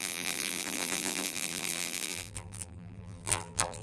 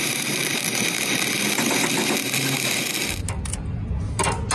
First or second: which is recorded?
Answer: second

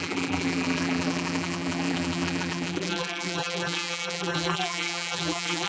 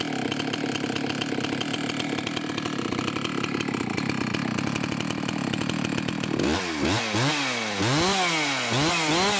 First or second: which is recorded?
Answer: second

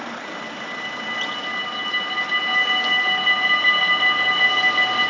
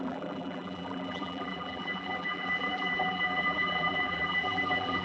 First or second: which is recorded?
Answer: first